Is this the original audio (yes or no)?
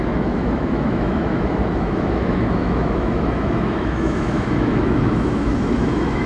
no